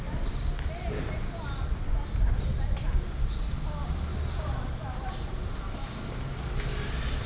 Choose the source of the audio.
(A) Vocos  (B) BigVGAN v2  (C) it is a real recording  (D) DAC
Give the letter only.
C